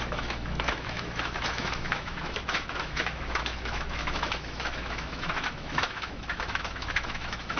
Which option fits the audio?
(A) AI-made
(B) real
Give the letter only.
A